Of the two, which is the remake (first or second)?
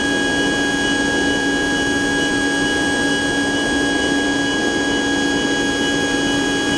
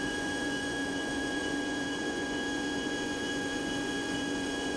second